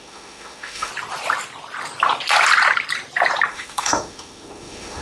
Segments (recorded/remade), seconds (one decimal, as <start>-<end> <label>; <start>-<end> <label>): 0.0-0.9 remade; 0.9-3.5 recorded; 3.5-5.0 remade